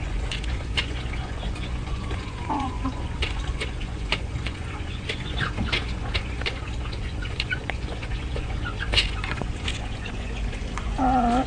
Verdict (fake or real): fake